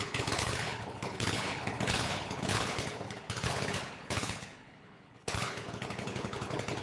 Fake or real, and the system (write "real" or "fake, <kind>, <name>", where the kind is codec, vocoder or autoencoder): fake, codec, HILCodec